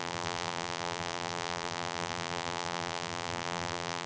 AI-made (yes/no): yes